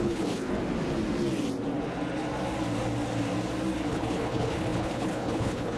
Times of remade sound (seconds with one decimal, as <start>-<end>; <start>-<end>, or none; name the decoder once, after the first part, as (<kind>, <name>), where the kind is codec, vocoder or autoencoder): 0.0-0.5 (codec, HILCodec); 3.9-5.8